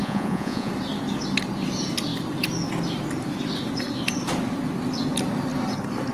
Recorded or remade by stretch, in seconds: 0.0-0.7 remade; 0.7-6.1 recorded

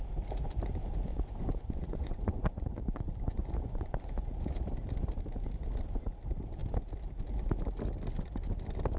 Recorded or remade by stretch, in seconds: 0.0-1.1 recorded; 1.1-4.2 remade; 4.2-9.0 recorded

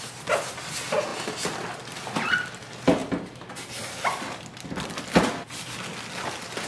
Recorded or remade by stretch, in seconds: 0.0-6.7 recorded

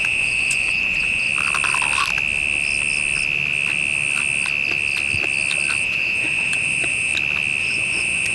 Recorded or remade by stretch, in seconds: 0.0-1.3 remade; 1.3-5.8 recorded; 5.8-7.1 remade; 7.1-7.6 recorded; 7.6-8.3 remade

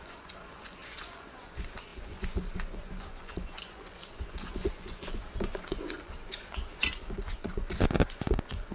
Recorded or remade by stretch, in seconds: 0.0-8.7 remade

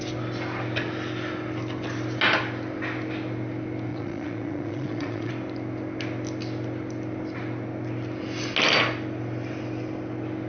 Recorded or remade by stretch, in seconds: 0.0-3.9 recorded; 3.9-5.3 remade; 5.3-10.5 recorded